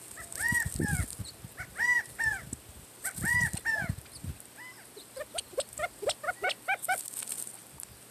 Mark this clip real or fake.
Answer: real